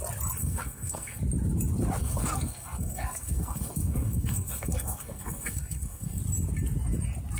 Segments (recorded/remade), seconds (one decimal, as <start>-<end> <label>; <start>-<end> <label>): 0.0-0.4 recorded; 0.4-1.2 remade; 1.2-2.0 recorded; 2.0-6.2 remade; 6.2-7.4 recorded